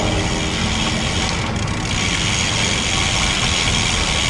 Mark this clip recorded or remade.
recorded